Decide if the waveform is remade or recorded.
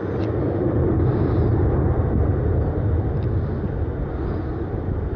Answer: recorded